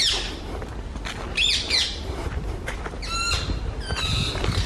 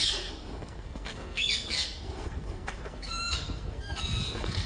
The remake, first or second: second